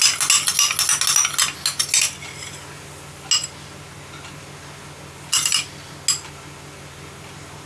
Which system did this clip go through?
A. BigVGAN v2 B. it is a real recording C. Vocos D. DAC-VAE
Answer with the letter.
B